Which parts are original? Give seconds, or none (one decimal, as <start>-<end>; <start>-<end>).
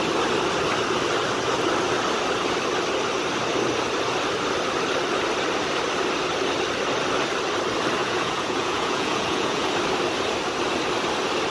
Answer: 0.0-8.0; 9.7-11.5